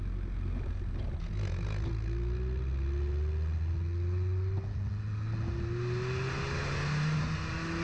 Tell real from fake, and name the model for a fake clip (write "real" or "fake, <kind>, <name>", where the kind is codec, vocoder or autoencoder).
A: real